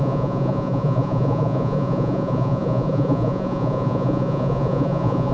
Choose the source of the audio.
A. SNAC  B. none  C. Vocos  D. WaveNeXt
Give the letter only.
C